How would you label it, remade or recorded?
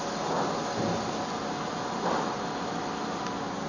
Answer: recorded